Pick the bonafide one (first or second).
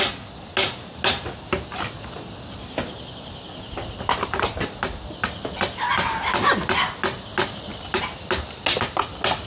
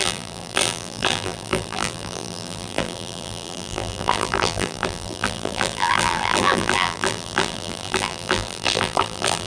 first